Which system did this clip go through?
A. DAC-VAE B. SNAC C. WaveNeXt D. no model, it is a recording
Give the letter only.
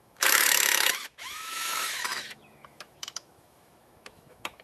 A